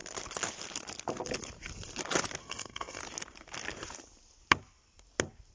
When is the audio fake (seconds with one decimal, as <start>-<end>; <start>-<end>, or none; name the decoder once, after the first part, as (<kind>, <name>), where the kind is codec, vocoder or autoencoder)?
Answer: 2.4-3.0 (codec, SNAC)